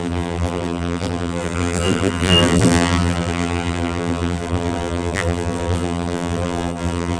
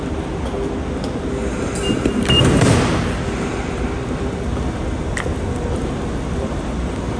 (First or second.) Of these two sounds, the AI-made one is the first